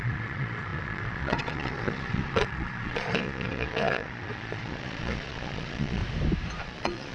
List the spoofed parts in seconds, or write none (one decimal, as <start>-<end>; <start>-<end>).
0.0-6.0; 6.6-7.1